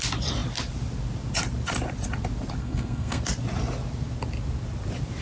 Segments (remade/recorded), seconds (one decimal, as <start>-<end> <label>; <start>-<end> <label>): 0.0-2.6 recorded; 2.6-3.2 remade; 3.2-5.2 recorded